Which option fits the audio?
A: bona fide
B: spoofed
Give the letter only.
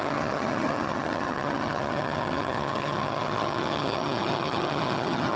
B